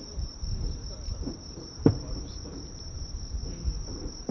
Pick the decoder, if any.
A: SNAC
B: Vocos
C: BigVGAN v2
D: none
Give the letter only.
C